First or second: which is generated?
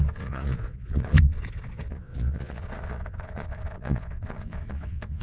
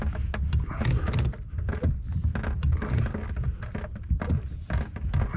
first